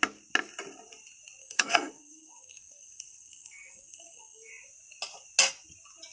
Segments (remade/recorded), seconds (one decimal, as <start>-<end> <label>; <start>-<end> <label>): 0.0-1.4 recorded; 1.4-4.5 remade; 4.5-6.1 recorded

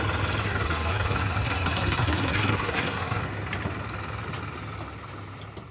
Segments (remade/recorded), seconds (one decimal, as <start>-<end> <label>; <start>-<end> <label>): 0.0-0.4 recorded; 0.4-3.2 remade; 3.2-5.7 recorded

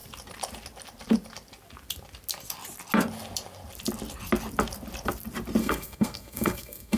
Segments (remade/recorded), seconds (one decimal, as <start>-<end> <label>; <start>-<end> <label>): 0.0-5.6 recorded; 5.6-7.0 remade

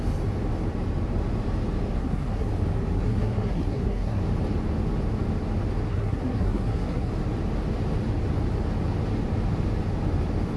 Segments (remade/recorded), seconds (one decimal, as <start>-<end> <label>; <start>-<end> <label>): 0.0-2.0 recorded; 2.0-2.5 remade; 2.5-2.9 recorded; 2.9-4.2 remade; 4.2-5.9 recorded; 5.9-7.1 remade; 7.1-10.6 recorded

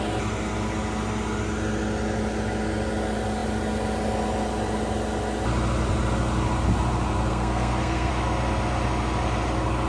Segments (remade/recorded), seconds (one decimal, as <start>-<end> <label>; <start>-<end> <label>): 0.0-7.3 recorded; 7.3-8.1 remade; 8.1-9.9 recorded

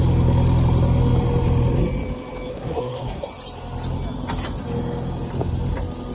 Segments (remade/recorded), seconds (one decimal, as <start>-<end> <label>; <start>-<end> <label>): 0.0-2.5 recorded; 2.5-3.3 remade; 3.3-6.1 recorded